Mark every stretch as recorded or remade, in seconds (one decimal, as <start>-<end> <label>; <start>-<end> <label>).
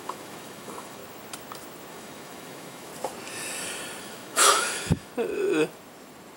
0.0-1.0 remade; 1.0-1.9 recorded; 1.9-2.9 remade; 2.9-4.0 recorded; 4.0-5.1 remade; 5.1-6.4 recorded